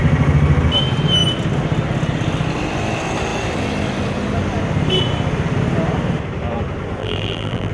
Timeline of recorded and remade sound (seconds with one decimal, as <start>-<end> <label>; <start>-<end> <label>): 0.0-7.0 recorded; 7.0-7.7 remade